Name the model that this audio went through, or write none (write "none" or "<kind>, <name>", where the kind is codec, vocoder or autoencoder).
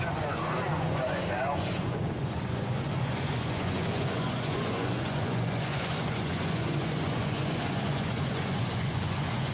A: vocoder, Vocos